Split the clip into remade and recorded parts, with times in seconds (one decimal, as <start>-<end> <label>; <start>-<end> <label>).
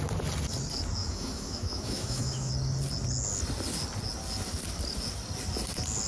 0.0-1.0 recorded; 1.0-2.5 remade; 2.5-6.1 recorded